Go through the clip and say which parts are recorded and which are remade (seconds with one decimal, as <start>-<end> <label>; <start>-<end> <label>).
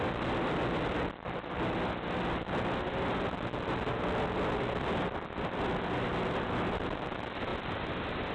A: 0.0-8.3 recorded